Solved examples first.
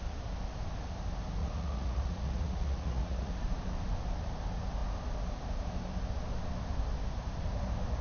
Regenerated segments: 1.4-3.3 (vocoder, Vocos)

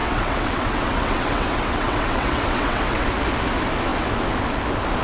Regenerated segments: 0.0-3.0 (vocoder, WaveNeXt)

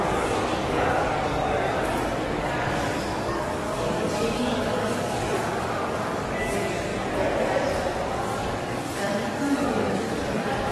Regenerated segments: 0.0-6.9 (codec, DAC); 8.2-10.7

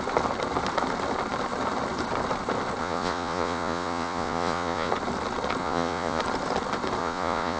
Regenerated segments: 2.8-4.9 (vocoder, Vocos); 5.6-6.2; 7.0-7.6